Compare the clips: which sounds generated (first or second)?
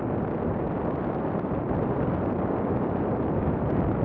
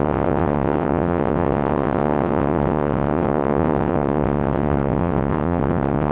second